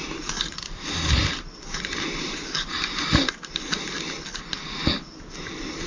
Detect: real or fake real